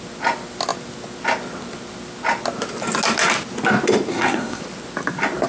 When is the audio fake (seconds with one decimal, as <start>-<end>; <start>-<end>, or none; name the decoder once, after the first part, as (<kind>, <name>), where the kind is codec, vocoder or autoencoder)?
4.1-4.6 (codec, SNAC)

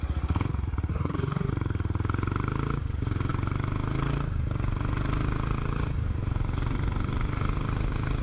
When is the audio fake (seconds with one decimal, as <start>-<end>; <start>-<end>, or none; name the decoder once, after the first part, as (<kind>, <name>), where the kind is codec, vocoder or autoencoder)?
0.9-1.5 (codec, SNAC)

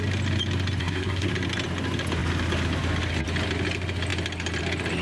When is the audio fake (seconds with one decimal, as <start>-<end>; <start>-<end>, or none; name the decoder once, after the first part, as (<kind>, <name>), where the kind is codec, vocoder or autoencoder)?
0.8-1.3 (codec, SNAC)

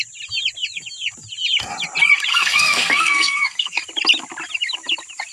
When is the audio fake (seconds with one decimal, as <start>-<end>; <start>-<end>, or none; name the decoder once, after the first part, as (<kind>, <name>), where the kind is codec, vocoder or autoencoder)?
2.3-3.8 (codec, SNAC)